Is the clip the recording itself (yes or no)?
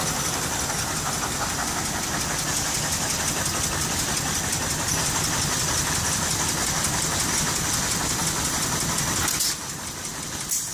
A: yes